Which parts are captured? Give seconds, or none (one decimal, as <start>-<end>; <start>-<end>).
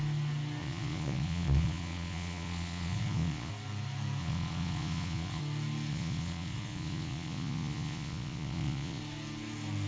0.0-0.6; 3.5-4.2; 5.4-5.9; 9.0-9.9